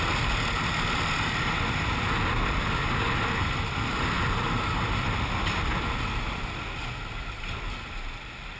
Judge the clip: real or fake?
real